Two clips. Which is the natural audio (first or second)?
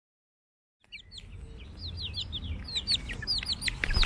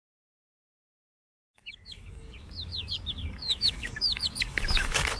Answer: first